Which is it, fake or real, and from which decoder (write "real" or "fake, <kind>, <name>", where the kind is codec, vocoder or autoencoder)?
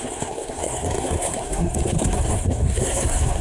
fake, codec, SNAC